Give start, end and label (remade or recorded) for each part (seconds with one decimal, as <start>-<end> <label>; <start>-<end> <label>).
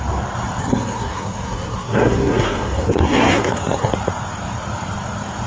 0.0-0.6 recorded; 0.6-3.9 remade; 3.9-5.5 recorded